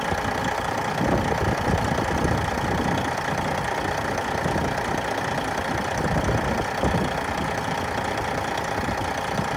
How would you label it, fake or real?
real